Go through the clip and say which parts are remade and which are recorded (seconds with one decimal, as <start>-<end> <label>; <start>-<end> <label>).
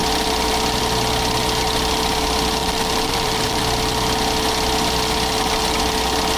0.0-2.6 recorded; 2.6-3.6 remade; 3.6-6.4 recorded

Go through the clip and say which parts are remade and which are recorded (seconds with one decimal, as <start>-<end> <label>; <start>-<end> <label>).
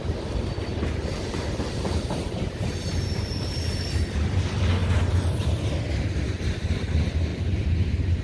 0.0-0.7 recorded; 0.7-3.7 remade; 3.7-4.8 recorded; 4.8-5.5 remade; 5.5-7.3 recorded; 7.3-8.2 remade